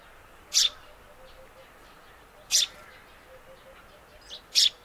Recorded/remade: recorded